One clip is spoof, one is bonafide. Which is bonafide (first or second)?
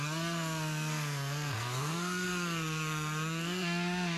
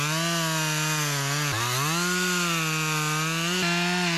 second